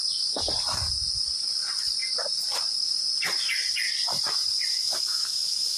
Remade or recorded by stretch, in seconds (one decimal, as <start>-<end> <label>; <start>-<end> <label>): 0.0-4.7 recorded; 4.7-5.8 remade

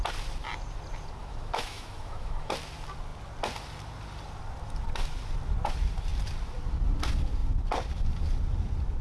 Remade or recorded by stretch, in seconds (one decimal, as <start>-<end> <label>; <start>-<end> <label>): 0.0-1.2 recorded; 1.2-2.5 remade; 2.5-9.0 recorded

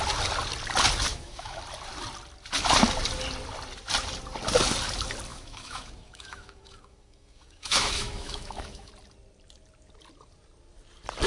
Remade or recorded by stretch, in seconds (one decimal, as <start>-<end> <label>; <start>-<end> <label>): 0.0-1.1 recorded; 1.1-1.6 remade; 1.6-5.3 recorded; 5.3-8.9 remade; 8.9-11.3 recorded

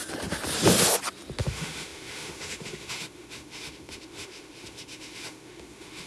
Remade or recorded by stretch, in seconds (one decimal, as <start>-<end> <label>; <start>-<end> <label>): 0.0-1.4 recorded; 1.4-6.1 remade

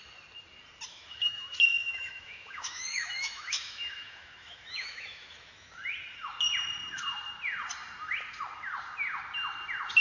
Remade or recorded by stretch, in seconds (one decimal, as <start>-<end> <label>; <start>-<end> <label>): 0.0-0.9 recorded; 0.9-5.7 remade; 5.7-10.0 recorded

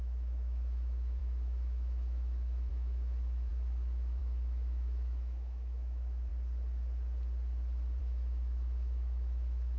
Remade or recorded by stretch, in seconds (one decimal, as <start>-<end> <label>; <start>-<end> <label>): 0.0-6.3 remade; 6.3-8.0 recorded; 8.0-9.8 remade